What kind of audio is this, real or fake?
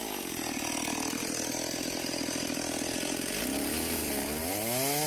real